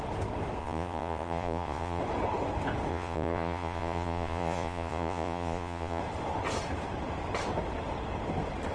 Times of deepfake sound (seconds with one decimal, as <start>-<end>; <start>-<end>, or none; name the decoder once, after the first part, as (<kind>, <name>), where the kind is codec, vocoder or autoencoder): 0.6-2.0 (vocoder, Vocos); 2.9-6.0